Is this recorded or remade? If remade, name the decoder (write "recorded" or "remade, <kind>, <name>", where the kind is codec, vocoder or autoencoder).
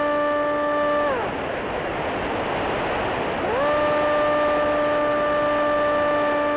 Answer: recorded